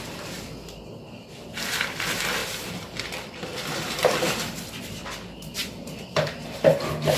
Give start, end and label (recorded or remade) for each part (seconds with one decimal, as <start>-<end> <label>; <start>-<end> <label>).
0.0-2.4 recorded; 2.4-4.2 remade; 4.2-5.6 recorded; 5.6-6.8 remade; 6.8-7.2 recorded